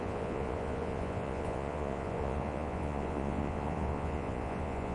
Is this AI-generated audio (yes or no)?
yes